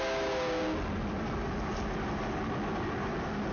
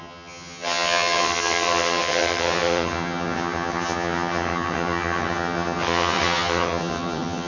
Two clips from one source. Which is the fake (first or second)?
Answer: second